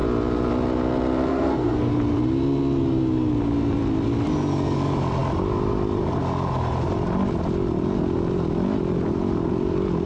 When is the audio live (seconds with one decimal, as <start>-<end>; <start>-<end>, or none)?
0.0-1.3; 1.9-10.1